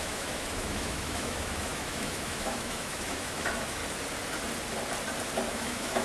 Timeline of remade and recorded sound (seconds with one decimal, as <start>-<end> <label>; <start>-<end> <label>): 0.0-3.8 remade; 3.8-5.5 recorded; 5.5-6.0 remade